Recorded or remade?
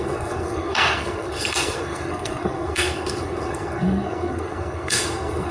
remade